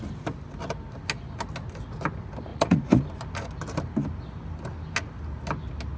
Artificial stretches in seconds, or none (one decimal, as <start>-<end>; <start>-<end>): 2.5-3.0